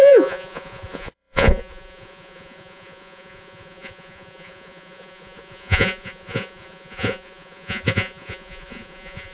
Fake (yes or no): yes